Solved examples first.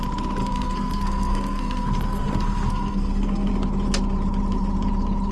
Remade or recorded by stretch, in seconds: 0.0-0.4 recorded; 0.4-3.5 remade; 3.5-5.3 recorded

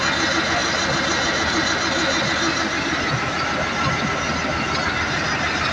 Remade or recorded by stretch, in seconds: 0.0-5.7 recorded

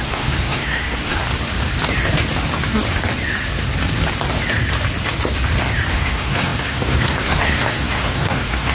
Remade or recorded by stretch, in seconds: 0.0-1.2 remade; 1.2-5.9 recorded; 5.9-8.7 remade

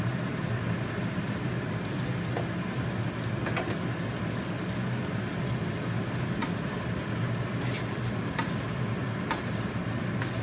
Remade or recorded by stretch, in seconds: 0.0-10.4 recorded

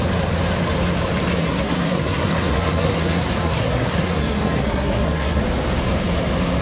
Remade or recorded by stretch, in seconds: 0.0-1.4 recorded; 1.4-5.4 remade; 5.4-6.6 recorded

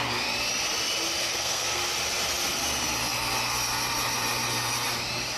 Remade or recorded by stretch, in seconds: 0.0-1.2 recorded; 1.2-1.8 remade; 1.8-5.4 recorded

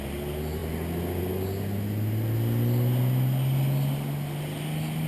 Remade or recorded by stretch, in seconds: 0.0-5.1 recorded